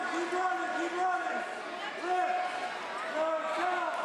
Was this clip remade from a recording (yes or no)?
no